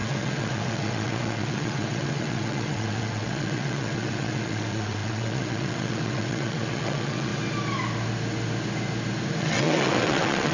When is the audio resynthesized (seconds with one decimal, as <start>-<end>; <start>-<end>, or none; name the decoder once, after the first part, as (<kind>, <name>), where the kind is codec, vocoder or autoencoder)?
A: 0.0-7.3 (vocoder, WaveNeXt); 9.4-10.5